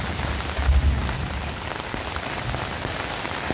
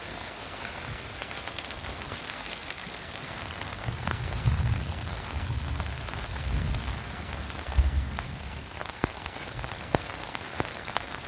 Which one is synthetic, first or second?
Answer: second